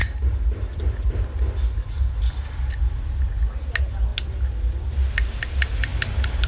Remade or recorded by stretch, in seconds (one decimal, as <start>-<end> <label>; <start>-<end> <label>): 0.0-1.1 remade; 1.1-6.5 recorded